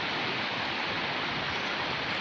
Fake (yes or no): no